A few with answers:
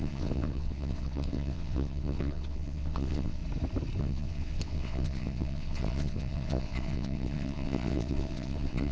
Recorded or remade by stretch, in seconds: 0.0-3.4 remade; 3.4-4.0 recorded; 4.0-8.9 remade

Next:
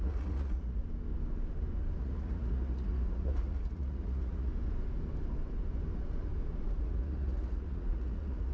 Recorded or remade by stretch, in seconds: 0.0-0.8 remade; 0.8-2.0 recorded; 2.0-4.5 remade; 4.5-6.8 recorded; 6.8-8.5 remade